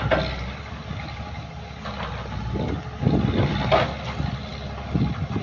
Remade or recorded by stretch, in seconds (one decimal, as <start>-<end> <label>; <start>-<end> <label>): 0.0-5.4 recorded